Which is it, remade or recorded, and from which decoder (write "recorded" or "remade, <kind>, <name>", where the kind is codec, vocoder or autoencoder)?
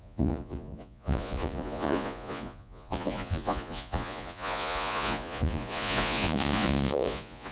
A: remade, vocoder, Vocos